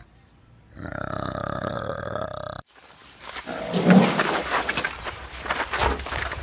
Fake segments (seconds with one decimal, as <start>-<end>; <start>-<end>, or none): 0.9-1.8